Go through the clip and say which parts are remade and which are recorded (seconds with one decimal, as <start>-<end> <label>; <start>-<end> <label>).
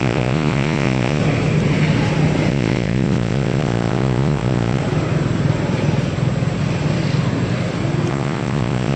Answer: 0.0-1.2 remade; 1.2-2.5 recorded; 2.5-4.8 remade; 4.8-8.1 recorded; 8.1-9.0 remade